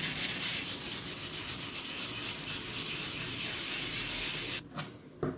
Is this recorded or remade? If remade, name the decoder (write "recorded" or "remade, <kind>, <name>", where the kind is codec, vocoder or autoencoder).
recorded